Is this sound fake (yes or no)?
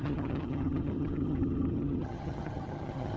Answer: yes